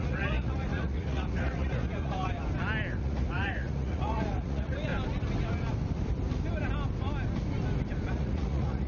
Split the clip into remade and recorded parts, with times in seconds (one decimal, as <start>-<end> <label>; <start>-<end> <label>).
0.0-2.3 remade; 2.3-2.9 recorded; 2.9-4.9 remade; 4.9-8.1 recorded; 8.1-8.9 remade